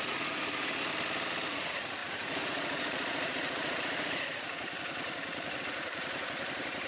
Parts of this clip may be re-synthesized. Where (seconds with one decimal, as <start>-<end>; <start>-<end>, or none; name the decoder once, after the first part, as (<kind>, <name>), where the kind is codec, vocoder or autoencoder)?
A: 0.0-0.9 (vocoder, Vocos); 1.5-6.9